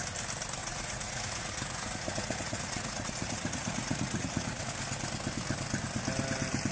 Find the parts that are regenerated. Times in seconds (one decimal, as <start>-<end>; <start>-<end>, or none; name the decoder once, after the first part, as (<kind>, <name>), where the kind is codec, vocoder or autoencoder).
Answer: 0.6-4.6 (vocoder, Vocos)